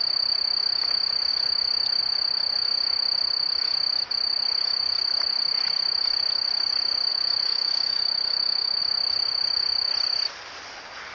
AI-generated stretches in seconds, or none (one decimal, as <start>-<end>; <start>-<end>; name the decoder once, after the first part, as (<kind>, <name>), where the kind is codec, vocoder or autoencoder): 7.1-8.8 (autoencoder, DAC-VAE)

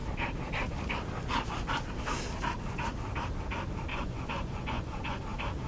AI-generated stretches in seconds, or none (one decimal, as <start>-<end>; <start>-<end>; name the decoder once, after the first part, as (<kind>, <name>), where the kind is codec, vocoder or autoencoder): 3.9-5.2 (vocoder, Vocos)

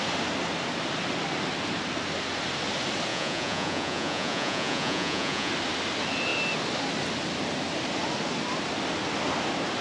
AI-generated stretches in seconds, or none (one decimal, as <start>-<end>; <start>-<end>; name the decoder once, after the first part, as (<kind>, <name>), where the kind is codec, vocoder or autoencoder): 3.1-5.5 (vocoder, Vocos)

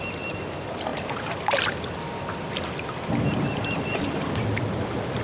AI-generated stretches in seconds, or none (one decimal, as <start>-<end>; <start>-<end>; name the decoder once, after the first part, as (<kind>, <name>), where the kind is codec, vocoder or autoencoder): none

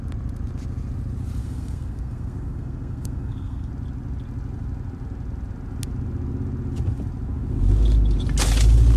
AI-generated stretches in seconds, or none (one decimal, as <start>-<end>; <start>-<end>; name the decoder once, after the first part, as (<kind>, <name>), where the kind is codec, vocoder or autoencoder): 1.4-3.7 (codec, SNAC)

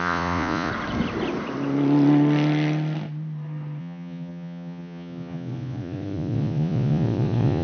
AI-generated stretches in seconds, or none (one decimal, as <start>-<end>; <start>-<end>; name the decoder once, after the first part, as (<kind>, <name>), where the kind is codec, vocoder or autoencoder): 0.0-0.7 (vocoder, Vocos); 3.8-7.6

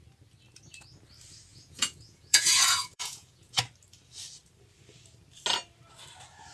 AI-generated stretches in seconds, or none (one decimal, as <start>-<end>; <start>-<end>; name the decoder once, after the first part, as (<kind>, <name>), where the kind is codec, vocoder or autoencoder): 1.5-3.6 (vocoder, Vocos)

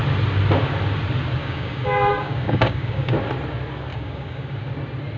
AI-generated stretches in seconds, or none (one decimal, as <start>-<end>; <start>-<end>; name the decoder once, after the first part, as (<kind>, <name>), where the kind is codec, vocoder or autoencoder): 1.4-3.2 (codec, DAC); 3.9-4.7